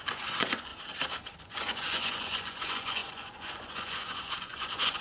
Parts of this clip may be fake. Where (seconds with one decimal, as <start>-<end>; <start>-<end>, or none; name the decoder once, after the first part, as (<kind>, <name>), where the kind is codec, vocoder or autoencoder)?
0.0-0.7 (vocoder, Vocos); 1.4-5.0